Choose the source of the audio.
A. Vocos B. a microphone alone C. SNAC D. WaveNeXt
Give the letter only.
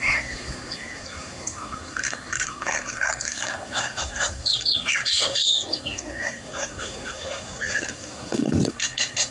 C